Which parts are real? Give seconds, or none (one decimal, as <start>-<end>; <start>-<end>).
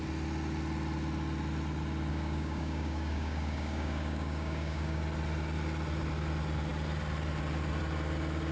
0.0-2.1; 5.0-8.5